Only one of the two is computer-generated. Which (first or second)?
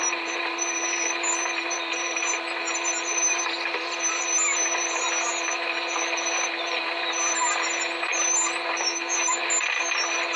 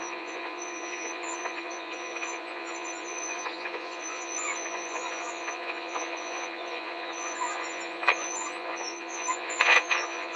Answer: second